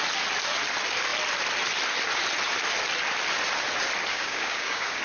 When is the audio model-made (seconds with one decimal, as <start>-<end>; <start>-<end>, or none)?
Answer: 4.1-5.0